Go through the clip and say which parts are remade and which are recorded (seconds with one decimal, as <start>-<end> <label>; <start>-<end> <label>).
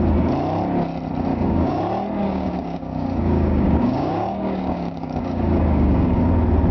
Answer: 0.0-1.3 recorded; 1.3-1.8 remade; 1.8-2.2 recorded; 2.2-6.2 remade; 6.2-6.7 recorded